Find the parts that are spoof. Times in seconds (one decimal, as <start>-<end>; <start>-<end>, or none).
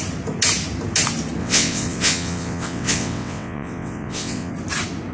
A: 1.4-4.5